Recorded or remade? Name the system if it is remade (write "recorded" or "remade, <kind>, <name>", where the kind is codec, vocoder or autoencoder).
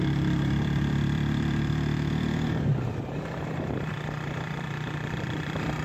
remade, vocoder, BigVGAN v2